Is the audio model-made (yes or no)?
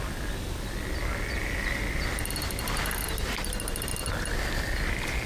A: no